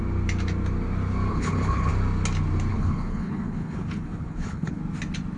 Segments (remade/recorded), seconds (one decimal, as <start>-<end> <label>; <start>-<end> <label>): 0.0-1.3 recorded; 1.3-1.9 remade; 1.9-2.7 recorded; 2.7-4.8 remade; 4.8-5.4 recorded